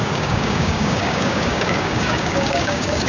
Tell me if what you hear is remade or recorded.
remade